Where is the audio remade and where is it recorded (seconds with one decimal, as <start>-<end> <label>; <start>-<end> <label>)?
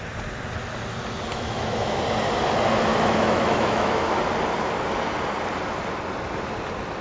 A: 0.0-1.3 recorded; 1.3-2.0 remade; 2.0-2.9 recorded; 2.9-4.2 remade; 4.2-7.0 recorded